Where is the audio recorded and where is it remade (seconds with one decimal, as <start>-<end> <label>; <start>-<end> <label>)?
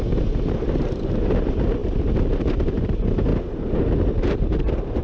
0.0-3.3 remade; 3.3-4.3 recorded; 4.3-5.0 remade